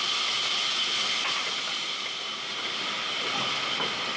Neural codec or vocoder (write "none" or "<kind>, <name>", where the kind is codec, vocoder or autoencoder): none